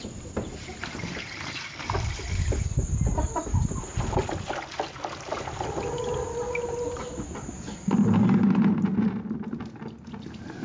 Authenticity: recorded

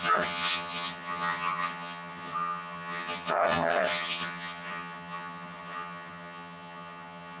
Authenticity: remade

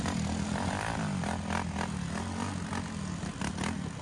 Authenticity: recorded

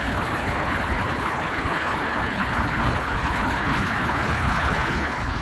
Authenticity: remade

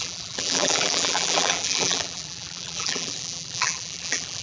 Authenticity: remade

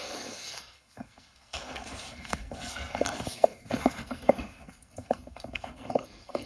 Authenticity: remade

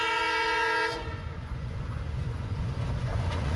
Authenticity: remade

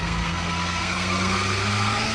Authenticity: remade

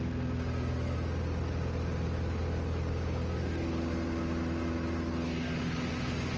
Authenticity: recorded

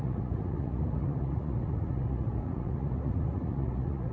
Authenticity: remade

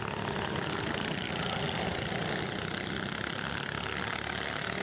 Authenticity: recorded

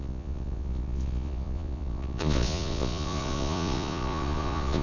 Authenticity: remade